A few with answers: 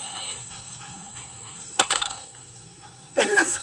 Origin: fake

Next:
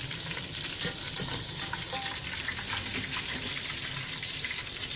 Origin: fake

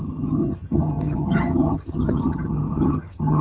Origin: fake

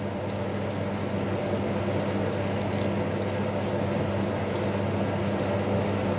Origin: real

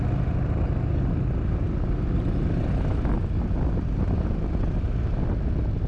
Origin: real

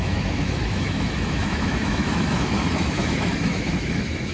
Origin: fake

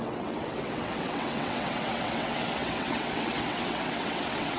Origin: fake